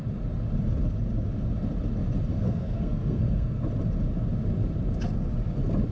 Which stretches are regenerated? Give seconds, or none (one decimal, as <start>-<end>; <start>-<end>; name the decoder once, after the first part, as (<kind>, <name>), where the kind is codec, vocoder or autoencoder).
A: 2.3-3.6 (codec, SNAC)